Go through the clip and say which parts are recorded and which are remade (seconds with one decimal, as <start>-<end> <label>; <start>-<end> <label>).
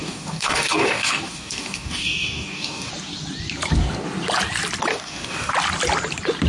0.0-2.9 remade; 2.9-4.9 recorded; 4.9-5.5 remade; 5.5-6.5 recorded